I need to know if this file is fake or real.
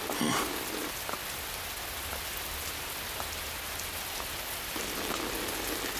real